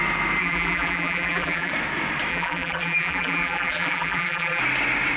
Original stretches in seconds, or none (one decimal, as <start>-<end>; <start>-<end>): 0.0-0.4; 1.7-2.3; 4.6-5.2